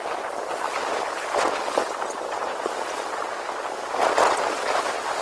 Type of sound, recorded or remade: recorded